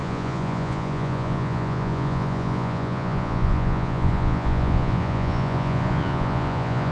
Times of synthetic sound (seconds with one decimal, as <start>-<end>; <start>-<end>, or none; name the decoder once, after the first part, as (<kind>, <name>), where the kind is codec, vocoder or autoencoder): 0.0-6.9 (vocoder, Vocos)